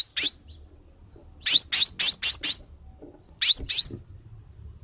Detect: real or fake real